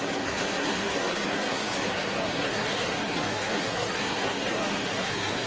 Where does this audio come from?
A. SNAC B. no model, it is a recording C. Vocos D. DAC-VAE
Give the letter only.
A